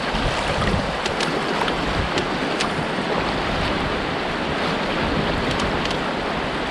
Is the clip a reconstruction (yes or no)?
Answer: no